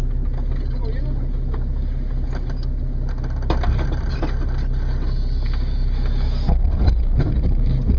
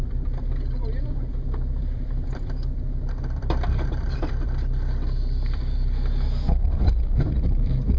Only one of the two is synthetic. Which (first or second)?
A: second